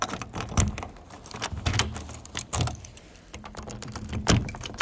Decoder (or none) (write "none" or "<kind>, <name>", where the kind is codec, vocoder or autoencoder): vocoder, BigVGAN v2